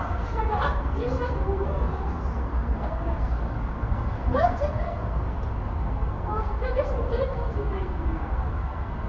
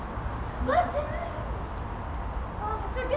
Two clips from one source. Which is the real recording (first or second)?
second